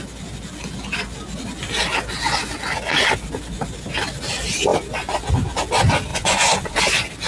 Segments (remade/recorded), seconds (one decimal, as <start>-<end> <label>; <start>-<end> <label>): 0.0-6.1 recorded; 6.1-6.8 remade; 6.8-7.3 recorded

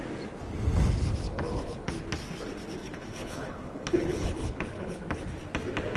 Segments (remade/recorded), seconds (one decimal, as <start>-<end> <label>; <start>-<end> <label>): 0.0-1.2 recorded; 1.2-1.9 remade; 1.9-2.8 recorded; 2.8-5.0 remade; 5.0-6.0 recorded

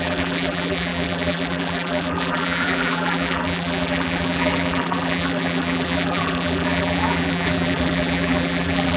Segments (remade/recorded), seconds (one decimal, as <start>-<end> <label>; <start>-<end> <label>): 0.0-9.0 remade